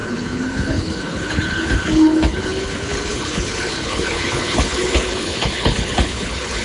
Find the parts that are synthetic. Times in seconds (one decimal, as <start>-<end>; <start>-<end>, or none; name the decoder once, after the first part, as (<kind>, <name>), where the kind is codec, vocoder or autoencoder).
0.0-6.6 (codec, HILCodec)